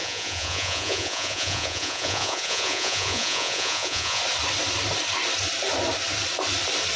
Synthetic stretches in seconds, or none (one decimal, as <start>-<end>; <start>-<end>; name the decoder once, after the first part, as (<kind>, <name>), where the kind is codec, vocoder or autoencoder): 0.0-4.2 (vocoder, Vocos)